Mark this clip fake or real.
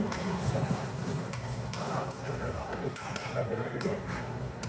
fake